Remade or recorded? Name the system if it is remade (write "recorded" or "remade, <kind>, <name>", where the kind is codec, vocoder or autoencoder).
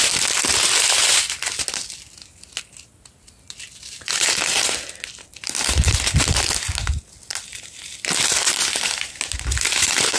recorded